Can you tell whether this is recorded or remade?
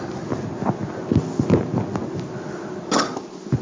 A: recorded